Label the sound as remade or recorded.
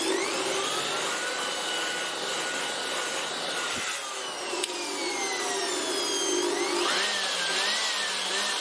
recorded